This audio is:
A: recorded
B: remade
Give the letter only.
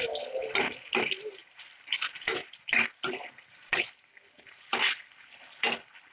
A